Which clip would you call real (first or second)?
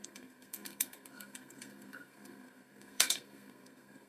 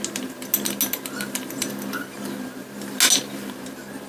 second